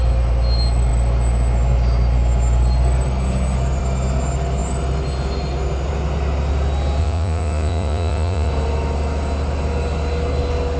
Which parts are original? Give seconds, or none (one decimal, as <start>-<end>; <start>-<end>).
0.0-7.0; 8.5-10.8